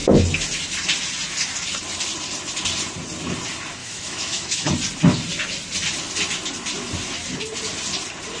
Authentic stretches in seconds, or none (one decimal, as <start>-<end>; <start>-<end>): 0.0-3.8; 4.7-8.4